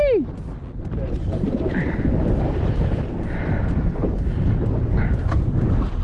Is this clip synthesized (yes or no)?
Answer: no